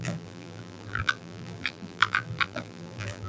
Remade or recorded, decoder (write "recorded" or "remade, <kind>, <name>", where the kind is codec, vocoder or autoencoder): remade, vocoder, BigVGAN v2